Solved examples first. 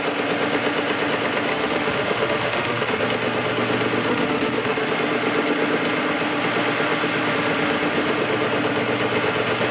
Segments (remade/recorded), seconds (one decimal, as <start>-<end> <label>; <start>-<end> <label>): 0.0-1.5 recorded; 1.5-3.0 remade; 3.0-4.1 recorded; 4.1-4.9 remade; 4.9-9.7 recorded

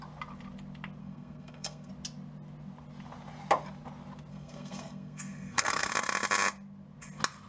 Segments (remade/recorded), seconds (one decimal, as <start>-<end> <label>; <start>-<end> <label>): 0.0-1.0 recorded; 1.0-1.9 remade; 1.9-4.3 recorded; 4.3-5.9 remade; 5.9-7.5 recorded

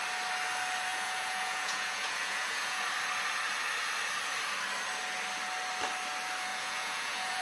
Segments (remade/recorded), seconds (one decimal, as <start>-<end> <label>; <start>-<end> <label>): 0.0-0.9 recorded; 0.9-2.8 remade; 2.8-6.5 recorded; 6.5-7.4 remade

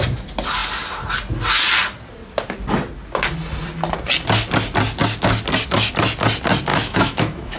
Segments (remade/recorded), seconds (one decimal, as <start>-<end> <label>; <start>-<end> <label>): 0.0-6.7 recorded; 6.7-7.6 remade